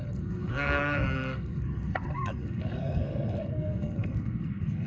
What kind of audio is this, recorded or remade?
remade